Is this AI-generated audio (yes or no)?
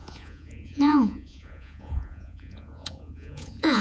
yes